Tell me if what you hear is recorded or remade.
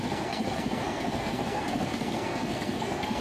remade